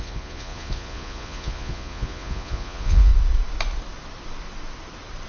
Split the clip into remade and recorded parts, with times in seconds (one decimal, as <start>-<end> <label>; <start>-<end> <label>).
0.0-3.1 remade; 3.1-5.3 recorded